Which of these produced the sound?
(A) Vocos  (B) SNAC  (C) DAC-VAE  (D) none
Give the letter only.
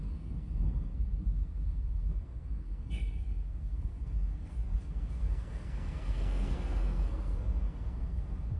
B